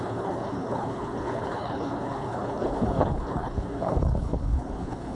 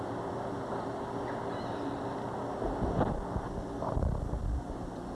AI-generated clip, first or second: first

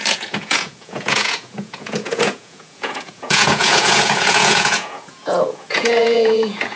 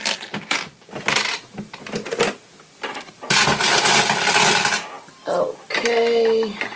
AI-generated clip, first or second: first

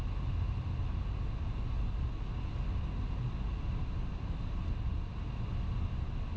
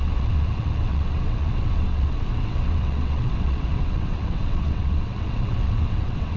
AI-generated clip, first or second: second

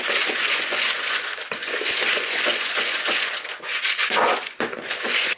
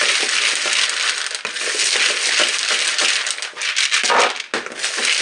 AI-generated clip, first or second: first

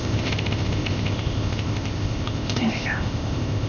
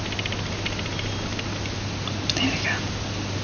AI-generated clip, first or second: first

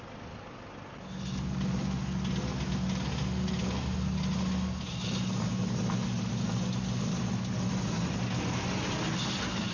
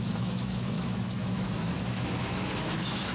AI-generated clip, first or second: second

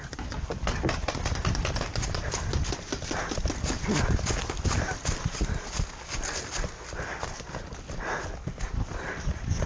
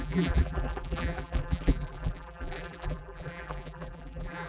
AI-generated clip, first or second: second